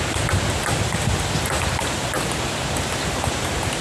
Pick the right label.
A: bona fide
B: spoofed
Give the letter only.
A